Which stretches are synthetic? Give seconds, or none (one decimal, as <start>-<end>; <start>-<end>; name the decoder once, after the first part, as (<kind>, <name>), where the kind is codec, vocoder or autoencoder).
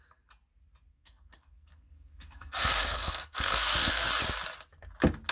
0.9-4.1 (codec, SNAC)